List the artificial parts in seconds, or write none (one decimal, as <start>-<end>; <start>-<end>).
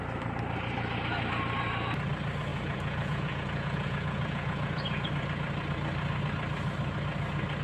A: 2.5-5.1